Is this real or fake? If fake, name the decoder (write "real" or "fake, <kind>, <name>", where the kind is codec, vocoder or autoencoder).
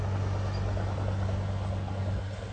real